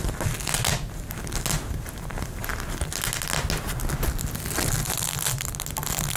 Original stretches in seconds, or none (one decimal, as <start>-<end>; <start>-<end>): 0.0-6.2